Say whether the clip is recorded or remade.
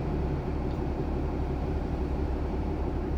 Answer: remade